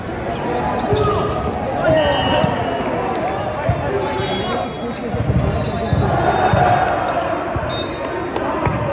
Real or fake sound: real